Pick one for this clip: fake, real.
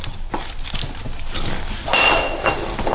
real